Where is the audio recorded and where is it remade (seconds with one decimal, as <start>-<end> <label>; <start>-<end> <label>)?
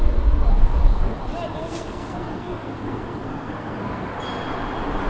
0.0-0.5 recorded; 0.5-1.2 remade; 1.2-1.6 recorded; 1.6-4.1 remade; 4.1-5.1 recorded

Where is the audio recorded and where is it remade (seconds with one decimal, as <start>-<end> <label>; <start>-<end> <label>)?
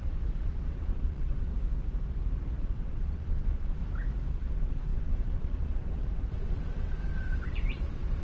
0.0-1.5 remade; 1.5-2.6 recorded; 2.6-3.8 remade; 3.8-4.3 recorded; 4.3-8.2 remade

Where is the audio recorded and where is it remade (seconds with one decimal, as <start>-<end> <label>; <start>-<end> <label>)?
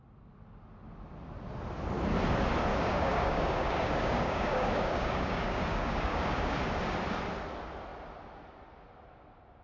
0.0-2.7 recorded; 2.7-6.6 remade; 6.6-9.6 recorded